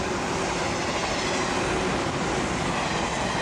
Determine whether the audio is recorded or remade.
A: recorded